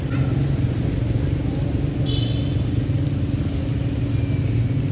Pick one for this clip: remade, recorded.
recorded